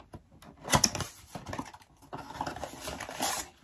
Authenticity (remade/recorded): recorded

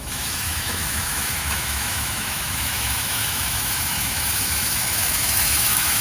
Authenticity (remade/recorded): remade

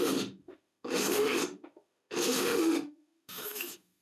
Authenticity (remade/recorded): remade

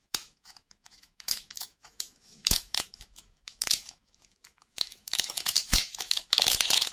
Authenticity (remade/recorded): remade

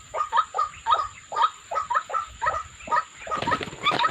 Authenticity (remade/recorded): recorded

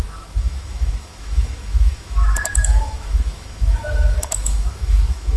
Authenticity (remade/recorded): remade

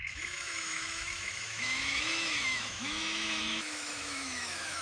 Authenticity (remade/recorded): remade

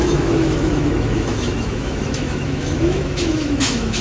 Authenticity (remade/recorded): remade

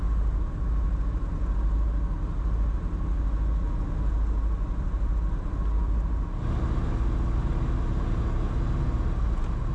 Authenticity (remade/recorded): recorded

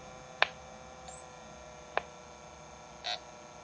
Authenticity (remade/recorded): recorded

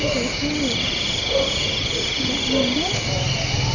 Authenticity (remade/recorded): recorded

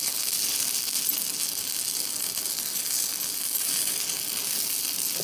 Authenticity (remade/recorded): recorded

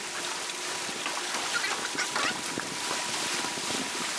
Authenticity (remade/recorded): recorded